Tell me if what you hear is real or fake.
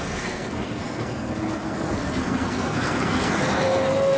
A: fake